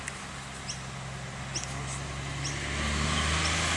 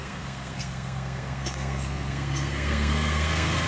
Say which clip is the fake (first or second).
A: second